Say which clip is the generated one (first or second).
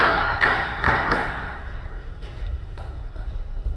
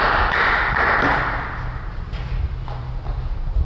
first